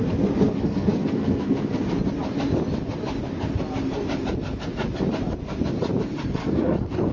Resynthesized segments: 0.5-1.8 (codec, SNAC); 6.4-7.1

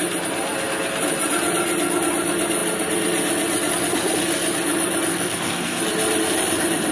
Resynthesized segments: 5.1-5.8 (codec, SNAC)

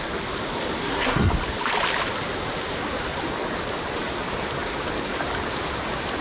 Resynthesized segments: 0.8-1.3 (codec, SNAC)

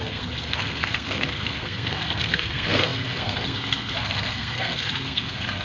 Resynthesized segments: 0.0-5.6 (codec, SNAC)

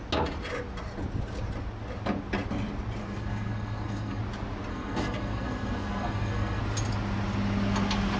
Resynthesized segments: 3.0-4.2 (codec, SNAC); 4.7-6.6

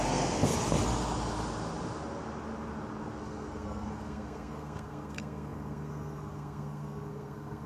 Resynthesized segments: 0.0-0.5 (codec, SNAC); 3.2-7.7

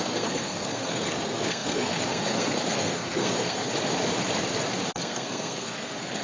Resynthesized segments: 0.0-3.6 (codec, SNAC); 4.9-6.2

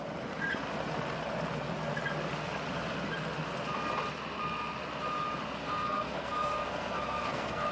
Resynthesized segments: 5.6-7.7 (codec, SNAC)